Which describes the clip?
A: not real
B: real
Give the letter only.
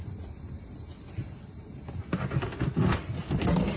B